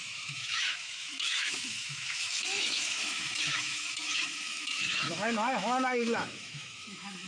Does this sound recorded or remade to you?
remade